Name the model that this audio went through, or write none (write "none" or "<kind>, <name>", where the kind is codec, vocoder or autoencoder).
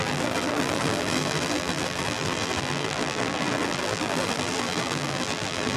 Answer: vocoder, BigVGAN v2